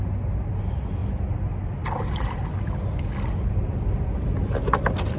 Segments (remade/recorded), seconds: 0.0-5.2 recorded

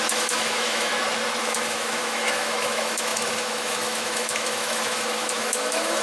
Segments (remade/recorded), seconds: 0.0-0.9 remade; 0.9-1.4 recorded; 1.4-6.0 remade